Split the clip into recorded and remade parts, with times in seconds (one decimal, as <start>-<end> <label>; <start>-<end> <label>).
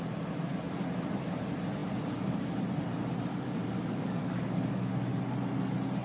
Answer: 0.0-3.3 recorded; 3.3-4.9 remade; 4.9-6.0 recorded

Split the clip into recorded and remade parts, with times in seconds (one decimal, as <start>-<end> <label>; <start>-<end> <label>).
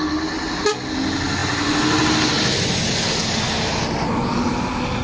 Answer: 0.0-5.0 recorded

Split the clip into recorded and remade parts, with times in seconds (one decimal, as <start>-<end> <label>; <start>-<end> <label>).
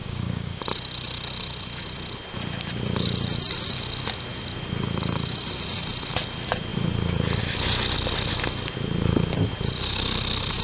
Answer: 0.0-0.6 remade; 0.6-10.6 recorded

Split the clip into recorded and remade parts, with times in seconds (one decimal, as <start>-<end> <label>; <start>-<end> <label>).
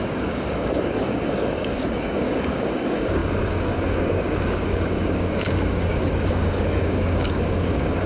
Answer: 0.0-8.1 remade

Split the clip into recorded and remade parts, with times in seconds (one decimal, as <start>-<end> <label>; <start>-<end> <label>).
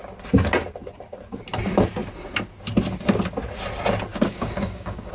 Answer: 0.0-4.1 recorded; 4.1-5.1 remade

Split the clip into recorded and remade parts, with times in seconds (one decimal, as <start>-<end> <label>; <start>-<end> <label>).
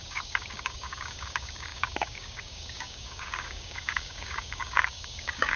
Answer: 0.0-5.6 remade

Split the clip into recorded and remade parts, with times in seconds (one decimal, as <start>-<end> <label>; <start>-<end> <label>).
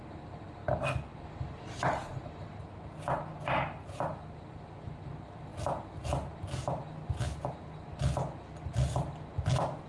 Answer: 0.0-9.9 recorded